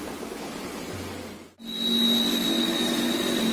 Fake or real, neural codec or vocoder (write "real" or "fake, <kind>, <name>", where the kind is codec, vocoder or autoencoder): real